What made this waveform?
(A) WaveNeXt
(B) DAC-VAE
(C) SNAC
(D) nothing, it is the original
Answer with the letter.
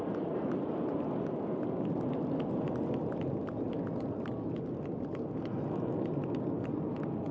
D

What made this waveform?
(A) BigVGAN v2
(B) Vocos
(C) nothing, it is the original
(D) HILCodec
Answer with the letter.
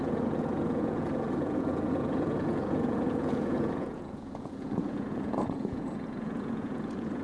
B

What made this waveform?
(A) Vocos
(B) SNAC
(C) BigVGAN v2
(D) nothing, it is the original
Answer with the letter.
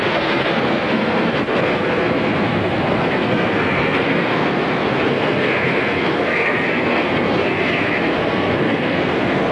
B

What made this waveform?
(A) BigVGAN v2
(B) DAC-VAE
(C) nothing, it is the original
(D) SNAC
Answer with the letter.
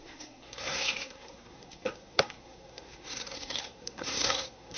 D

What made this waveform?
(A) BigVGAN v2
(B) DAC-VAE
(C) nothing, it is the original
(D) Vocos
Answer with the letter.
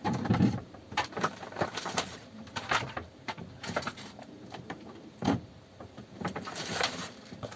A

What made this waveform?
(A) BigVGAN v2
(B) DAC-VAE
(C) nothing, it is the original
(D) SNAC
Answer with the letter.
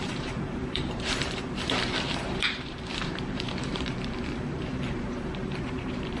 A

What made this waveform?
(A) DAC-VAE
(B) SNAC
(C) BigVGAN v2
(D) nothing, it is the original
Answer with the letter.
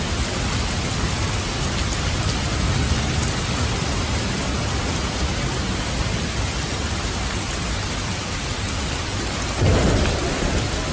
D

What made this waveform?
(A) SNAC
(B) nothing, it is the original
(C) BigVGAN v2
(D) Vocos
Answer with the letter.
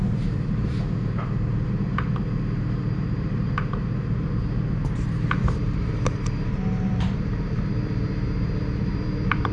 C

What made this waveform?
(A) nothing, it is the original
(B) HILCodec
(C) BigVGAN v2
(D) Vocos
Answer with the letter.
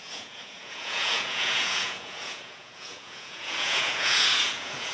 D